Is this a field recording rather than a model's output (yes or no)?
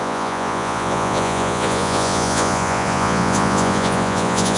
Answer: no